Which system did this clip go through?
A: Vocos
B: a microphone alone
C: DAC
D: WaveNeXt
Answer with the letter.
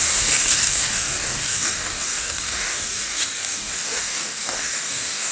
C